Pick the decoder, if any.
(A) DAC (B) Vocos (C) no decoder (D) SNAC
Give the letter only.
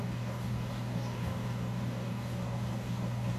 A